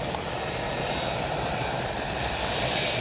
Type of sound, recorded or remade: recorded